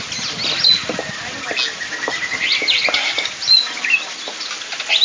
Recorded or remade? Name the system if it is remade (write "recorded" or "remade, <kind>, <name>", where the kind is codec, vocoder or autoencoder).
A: recorded